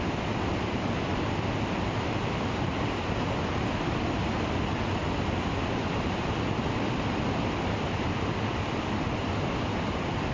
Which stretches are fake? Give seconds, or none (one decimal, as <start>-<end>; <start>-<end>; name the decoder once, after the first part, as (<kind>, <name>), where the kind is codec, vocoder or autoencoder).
none